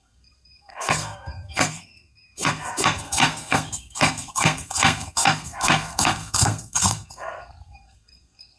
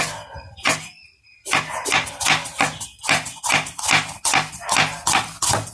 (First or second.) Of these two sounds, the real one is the second